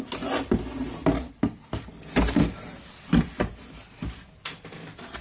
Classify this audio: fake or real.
real